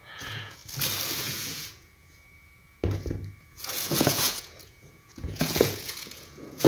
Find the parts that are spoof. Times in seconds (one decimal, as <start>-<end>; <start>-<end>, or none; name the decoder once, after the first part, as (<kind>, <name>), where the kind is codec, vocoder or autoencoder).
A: 0.0-0.6 (vocoder, Vocos); 1.2-2.8; 3.4-6.7